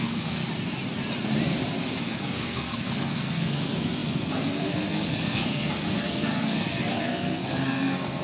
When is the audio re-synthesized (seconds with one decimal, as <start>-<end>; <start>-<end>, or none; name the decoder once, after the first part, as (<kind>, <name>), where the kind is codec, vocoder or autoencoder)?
0.0-0.4 (codec, SNAC); 2.0-8.2